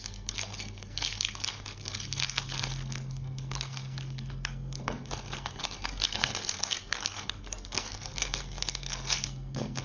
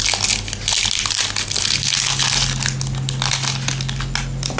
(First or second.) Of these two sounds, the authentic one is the second